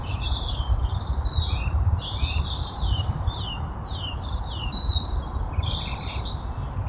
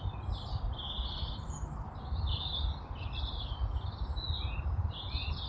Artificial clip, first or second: first